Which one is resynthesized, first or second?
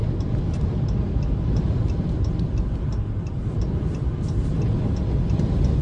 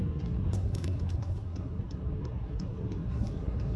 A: second